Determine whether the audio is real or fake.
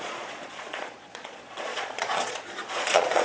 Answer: fake